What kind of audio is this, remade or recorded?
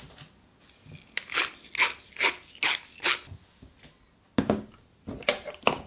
recorded